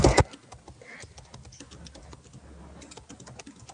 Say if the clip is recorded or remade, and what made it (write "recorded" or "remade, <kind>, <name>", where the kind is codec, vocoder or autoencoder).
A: recorded